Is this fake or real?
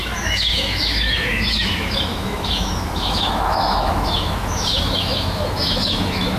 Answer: fake